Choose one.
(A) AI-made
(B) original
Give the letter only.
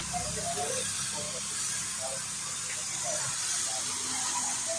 A